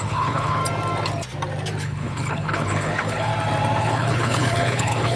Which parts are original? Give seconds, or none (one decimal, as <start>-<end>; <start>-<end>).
0.6-1.8; 3.3-3.8